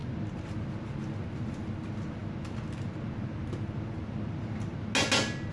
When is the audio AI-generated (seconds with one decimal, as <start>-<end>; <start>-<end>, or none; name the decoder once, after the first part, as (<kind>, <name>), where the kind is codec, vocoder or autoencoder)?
none